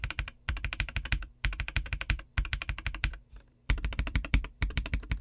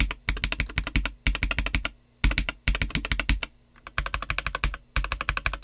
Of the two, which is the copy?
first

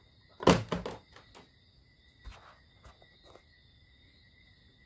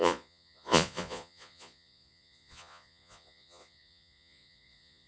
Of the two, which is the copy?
second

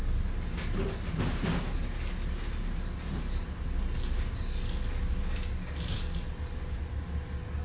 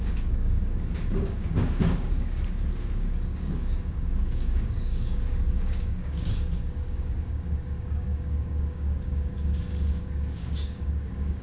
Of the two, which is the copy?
second